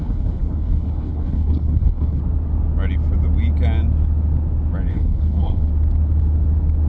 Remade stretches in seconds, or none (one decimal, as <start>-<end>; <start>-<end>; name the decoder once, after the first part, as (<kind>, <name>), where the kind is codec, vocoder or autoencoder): 0.0-2.2 (codec, HILCodec); 4.9-5.7